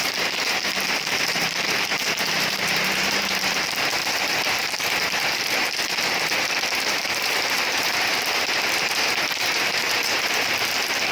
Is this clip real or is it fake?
fake